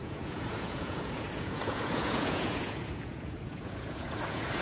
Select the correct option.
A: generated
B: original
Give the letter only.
A